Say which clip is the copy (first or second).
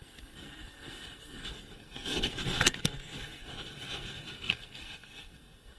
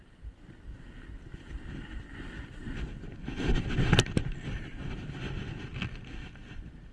first